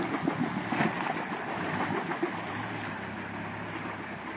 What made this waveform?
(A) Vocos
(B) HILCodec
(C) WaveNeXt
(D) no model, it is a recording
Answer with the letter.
D